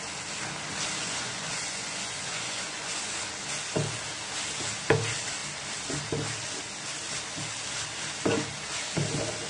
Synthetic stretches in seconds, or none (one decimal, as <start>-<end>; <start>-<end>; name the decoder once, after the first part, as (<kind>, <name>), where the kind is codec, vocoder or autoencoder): 1.0-3.1 (vocoder, Vocos)